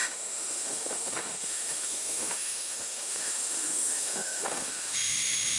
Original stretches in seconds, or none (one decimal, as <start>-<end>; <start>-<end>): none